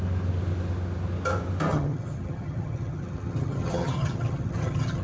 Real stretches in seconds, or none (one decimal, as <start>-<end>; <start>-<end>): 0.0-1.7